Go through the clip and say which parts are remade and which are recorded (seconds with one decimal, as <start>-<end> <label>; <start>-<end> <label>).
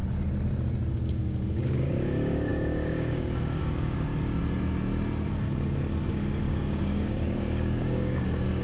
0.0-0.9 recorded; 0.9-4.1 remade; 4.1-6.1 recorded; 6.1-8.6 remade